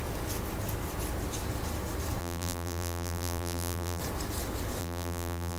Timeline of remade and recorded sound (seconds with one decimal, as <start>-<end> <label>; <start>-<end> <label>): 0.0-2.2 recorded; 2.2-4.0 remade; 4.0-4.8 recorded; 4.8-5.6 remade